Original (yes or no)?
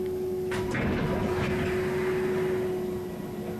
yes